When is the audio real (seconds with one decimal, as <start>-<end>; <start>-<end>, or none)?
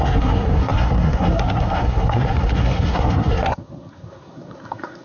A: none